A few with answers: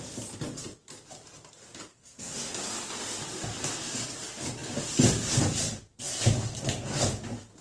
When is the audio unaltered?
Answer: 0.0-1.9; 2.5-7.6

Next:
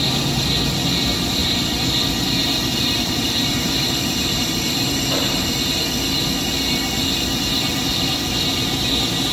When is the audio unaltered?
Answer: 0.0-2.7; 5.7-9.3